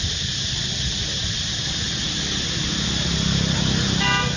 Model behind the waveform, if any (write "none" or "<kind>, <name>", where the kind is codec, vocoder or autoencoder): none